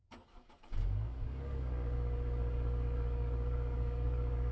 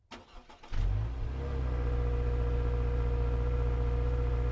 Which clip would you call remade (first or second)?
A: first